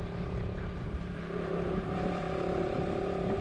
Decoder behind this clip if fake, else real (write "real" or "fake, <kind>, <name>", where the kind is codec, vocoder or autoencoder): fake, vocoder, BigVGAN v2